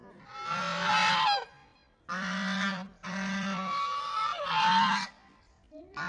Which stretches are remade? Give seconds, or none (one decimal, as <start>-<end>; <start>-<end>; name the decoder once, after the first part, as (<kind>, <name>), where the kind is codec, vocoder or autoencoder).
1.6-5.1 (vocoder, BigVGAN v2)